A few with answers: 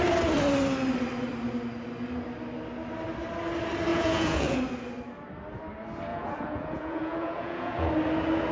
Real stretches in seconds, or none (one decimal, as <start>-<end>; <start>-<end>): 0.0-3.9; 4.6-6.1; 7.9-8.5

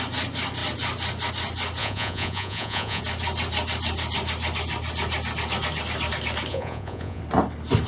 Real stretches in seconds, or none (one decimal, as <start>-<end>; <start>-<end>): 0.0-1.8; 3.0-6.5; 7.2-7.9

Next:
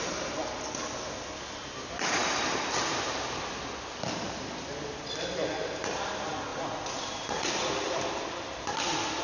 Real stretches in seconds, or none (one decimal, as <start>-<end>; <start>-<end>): 0.0-6.5; 7.7-9.2

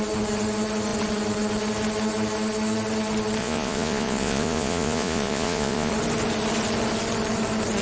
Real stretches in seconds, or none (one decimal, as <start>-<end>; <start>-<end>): 0.0-3.4; 5.9-7.8